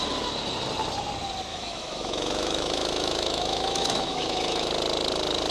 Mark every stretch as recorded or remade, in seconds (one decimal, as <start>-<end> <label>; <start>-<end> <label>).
0.0-1.5 recorded; 1.5-4.7 remade; 4.7-5.5 recorded